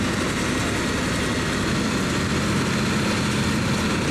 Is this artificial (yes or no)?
no